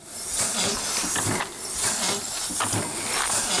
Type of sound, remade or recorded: recorded